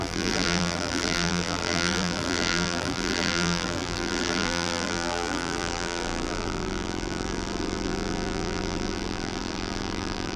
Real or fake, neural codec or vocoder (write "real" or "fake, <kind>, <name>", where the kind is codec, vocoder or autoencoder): fake, vocoder, BigVGAN v2